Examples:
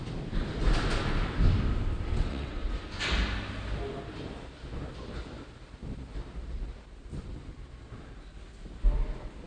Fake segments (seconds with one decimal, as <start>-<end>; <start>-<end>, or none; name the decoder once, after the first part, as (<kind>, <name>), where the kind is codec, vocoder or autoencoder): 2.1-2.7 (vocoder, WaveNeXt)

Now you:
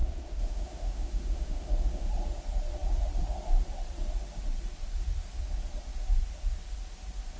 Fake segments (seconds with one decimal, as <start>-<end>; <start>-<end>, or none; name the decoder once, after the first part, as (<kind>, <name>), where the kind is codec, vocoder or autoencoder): 0.0-2.1 (autoencoder, DAC-VAE)

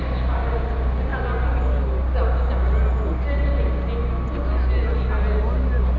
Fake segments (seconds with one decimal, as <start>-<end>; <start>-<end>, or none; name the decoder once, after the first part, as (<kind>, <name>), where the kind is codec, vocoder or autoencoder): none

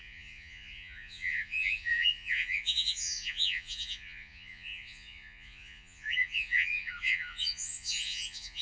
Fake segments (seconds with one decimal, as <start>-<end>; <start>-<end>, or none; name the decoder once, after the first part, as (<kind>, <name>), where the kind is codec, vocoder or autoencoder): 0.0-8.6 (vocoder, Vocos)

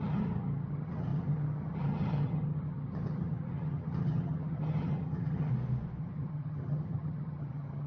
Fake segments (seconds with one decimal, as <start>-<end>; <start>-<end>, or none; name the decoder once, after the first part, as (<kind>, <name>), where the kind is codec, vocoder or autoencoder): 0.0-5.5 (vocoder, HiFi-GAN); 6.0-7.9

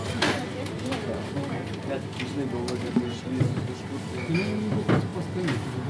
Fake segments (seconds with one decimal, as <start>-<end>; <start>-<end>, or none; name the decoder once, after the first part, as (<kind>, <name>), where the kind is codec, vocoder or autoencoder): none

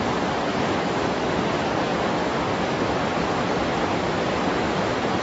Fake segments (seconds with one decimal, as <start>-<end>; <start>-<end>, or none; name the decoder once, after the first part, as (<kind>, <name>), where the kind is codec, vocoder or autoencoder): 0.5-1.3 (autoencoder, DAC-VAE)